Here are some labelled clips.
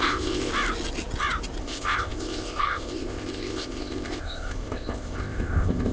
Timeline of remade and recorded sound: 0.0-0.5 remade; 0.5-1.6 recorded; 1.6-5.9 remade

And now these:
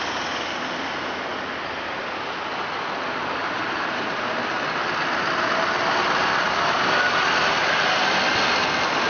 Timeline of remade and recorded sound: 0.0-3.4 recorded; 3.4-4.8 remade; 4.8-9.1 recorded

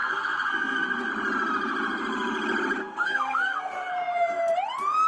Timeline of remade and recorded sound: 0.0-1.1 remade; 1.1-2.8 recorded; 2.8-3.9 remade; 3.9-5.1 recorded